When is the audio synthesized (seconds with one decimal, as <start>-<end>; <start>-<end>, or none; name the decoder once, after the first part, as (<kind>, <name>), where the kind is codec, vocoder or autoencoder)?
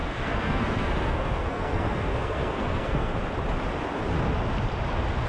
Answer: 0.0-3.2 (codec, SNAC)